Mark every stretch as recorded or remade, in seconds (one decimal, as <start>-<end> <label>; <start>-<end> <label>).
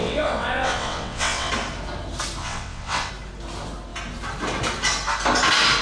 0.0-1.5 remade; 1.5-2.4 recorded; 2.4-3.1 remade; 3.1-5.8 recorded